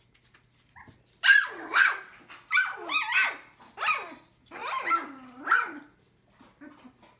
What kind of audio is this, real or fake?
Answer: real